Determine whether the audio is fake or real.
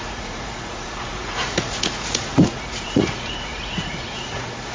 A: fake